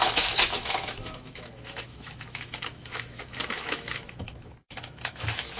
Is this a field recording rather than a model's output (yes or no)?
no